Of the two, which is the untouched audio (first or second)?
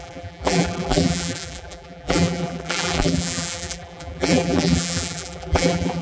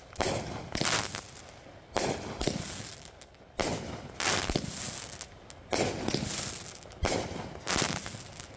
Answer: second